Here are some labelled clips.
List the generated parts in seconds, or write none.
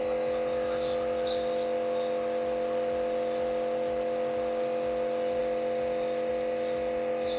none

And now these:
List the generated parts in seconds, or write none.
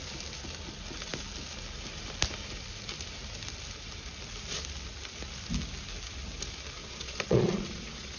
6.8-8.2 (vocoder, Vocos)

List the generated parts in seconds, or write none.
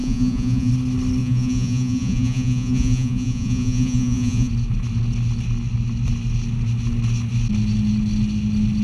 0.0-0.7 (vocoder, Vocos); 1.2-4.5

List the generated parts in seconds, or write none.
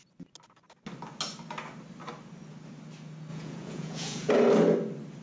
3.3-4.3 (vocoder, Vocos)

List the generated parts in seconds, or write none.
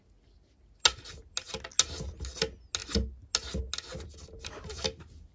none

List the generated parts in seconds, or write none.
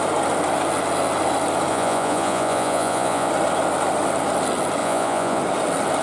1.7-3.3 (vocoder, Vocos); 4.8-5.4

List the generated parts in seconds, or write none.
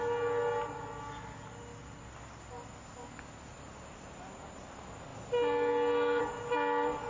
none